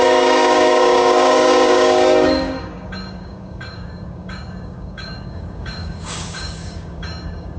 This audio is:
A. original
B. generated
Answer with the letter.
B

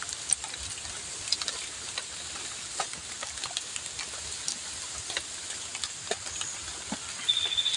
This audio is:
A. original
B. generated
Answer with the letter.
A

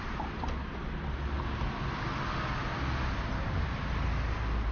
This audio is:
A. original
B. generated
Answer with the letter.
A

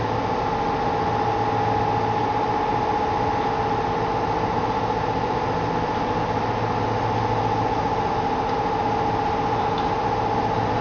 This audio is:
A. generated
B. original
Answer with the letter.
B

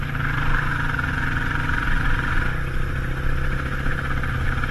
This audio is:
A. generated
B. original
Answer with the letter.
B